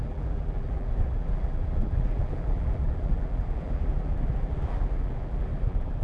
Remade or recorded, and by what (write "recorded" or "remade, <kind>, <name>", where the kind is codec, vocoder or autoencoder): remade, vocoder, BigVGAN v2